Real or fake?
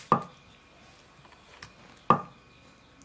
real